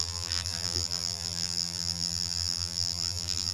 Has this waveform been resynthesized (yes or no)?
yes